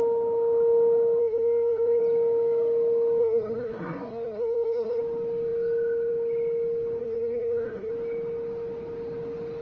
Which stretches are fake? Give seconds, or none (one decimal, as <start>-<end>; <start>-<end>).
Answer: 1.2-2.0; 3.2-5.0; 7.0-7.9